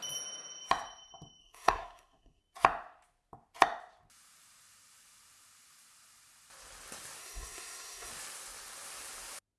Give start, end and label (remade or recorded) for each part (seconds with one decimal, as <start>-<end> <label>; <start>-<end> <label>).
0.0-1.4 recorded; 1.4-2.4 remade; 2.4-7.2 recorded; 7.2-8.1 remade; 8.1-9.6 recorded